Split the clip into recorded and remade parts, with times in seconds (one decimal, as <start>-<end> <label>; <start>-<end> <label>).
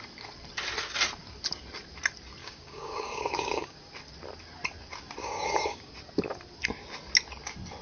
0.0-2.4 recorded; 2.4-3.8 remade; 3.8-5.2 recorded; 5.2-5.9 remade; 5.9-7.8 recorded